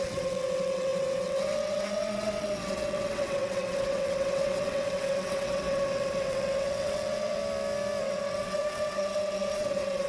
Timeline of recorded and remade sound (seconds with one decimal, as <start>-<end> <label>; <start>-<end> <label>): 0.0-7.4 remade; 7.4-8.0 recorded; 8.0-10.1 remade